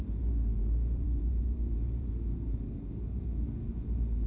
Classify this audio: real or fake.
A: fake